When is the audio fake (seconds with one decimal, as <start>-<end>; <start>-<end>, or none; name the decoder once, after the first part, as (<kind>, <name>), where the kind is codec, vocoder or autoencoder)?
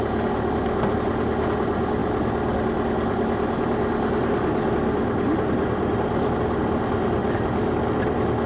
none